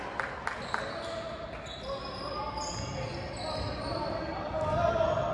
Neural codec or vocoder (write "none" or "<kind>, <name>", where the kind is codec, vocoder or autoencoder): none